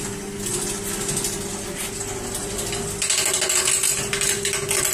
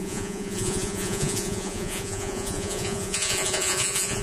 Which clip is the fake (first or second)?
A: second